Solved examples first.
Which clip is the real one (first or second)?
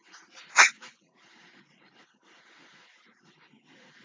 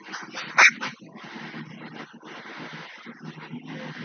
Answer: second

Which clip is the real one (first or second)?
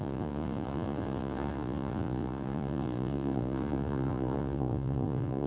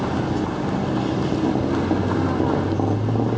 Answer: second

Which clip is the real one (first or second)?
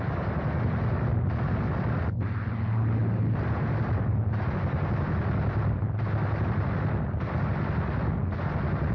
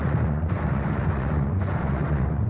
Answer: first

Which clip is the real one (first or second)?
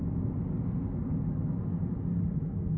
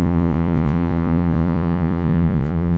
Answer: first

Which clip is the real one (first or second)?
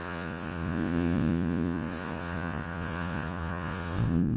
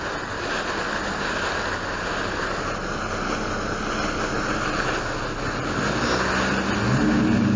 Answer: second